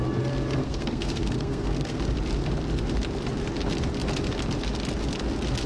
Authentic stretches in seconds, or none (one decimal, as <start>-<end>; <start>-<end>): 0.0-0.6; 2.0-5.7